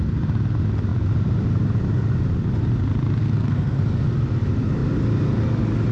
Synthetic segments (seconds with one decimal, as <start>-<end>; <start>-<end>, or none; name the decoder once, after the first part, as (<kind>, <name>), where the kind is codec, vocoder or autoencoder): 3.2-3.8 (codec, SNAC)